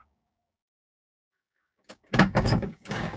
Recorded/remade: remade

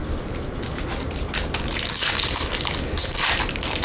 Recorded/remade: recorded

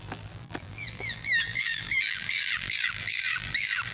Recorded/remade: remade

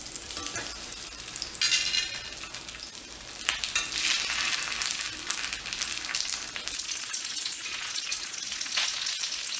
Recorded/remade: recorded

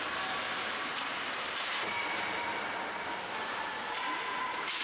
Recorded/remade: recorded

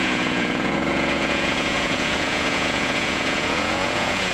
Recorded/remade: remade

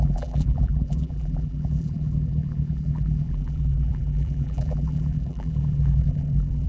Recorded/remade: remade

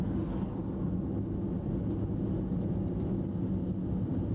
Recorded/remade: recorded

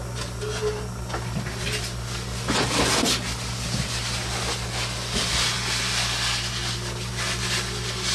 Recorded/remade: recorded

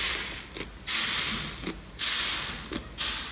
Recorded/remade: recorded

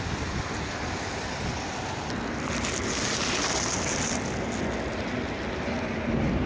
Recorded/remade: recorded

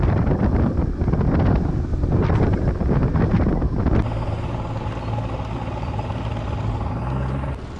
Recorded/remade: recorded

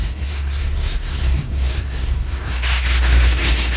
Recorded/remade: remade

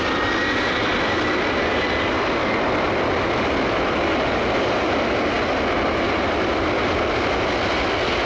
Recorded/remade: recorded